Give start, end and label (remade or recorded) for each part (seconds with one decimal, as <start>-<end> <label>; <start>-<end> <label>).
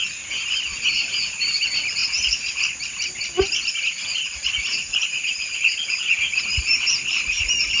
0.0-2.0 recorded; 2.0-2.6 remade; 2.6-4.1 recorded; 4.1-6.5 remade; 6.5-7.8 recorded